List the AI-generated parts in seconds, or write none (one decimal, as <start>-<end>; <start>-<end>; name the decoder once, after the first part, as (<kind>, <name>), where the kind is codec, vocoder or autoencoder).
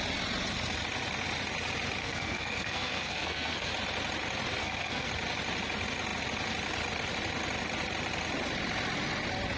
2.0-3.7 (codec, SNAC); 4.6-5.1